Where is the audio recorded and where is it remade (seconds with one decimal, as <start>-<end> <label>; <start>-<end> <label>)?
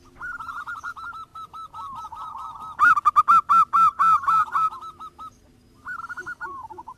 0.0-7.0 recorded